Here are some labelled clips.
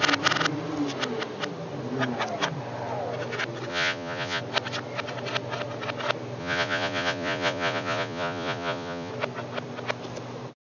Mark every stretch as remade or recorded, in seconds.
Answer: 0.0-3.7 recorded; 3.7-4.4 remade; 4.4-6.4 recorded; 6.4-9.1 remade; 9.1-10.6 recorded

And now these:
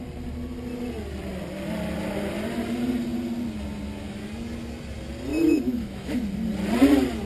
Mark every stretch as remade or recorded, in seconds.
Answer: 0.0-5.3 recorded; 5.3-6.2 remade; 6.2-7.3 recorded

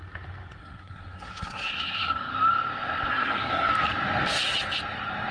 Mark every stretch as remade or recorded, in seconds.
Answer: 0.0-0.6 recorded; 0.6-2.3 remade; 2.3-3.1 recorded; 3.1-3.7 remade; 3.7-5.3 recorded